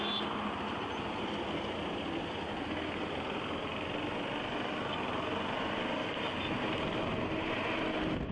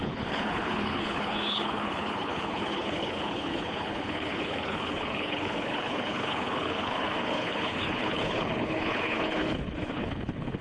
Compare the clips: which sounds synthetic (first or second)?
second